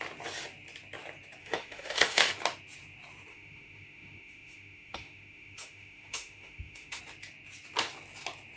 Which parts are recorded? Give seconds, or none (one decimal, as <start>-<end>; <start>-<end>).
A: 0.0-1.4; 2.3-3.3; 7.0-8.6